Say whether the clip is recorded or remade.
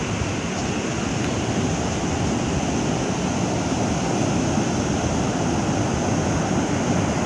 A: recorded